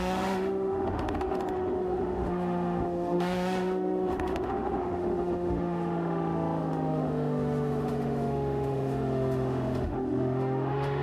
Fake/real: fake